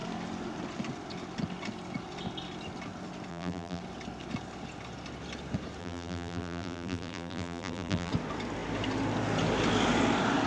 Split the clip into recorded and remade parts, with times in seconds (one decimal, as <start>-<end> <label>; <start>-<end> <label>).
0.0-3.3 recorded; 3.3-3.8 remade; 3.8-5.8 recorded; 5.8-8.1 remade; 8.1-10.5 recorded